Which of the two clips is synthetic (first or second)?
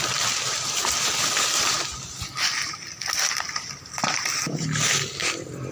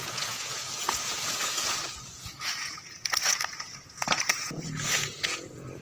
second